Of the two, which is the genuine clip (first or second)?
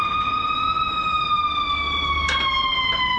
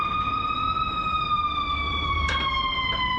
first